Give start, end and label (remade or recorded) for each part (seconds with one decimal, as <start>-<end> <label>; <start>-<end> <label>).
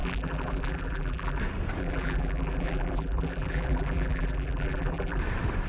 0.0-1.4 remade; 1.4-1.8 recorded; 1.8-5.2 remade; 5.2-5.7 recorded